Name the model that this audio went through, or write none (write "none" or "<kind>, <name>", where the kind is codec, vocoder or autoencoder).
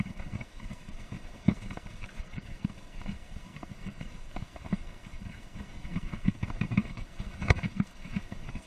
codec, SNAC